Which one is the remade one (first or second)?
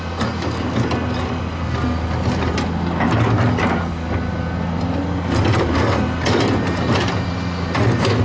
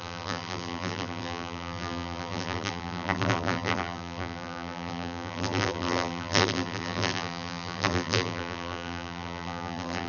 second